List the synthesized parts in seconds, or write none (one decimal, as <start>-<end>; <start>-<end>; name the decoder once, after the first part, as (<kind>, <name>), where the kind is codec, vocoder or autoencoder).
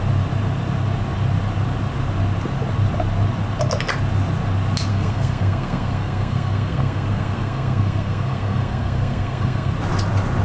4.9-9.7 (codec, SNAC)